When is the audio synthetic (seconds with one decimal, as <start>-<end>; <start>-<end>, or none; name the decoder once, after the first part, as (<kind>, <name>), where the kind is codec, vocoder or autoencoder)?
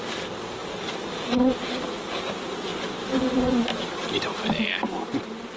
0.6-1.7 (vocoder, BigVGAN v2); 2.7-4.5